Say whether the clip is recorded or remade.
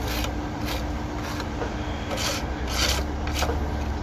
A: recorded